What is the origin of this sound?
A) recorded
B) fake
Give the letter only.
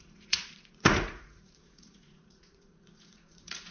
B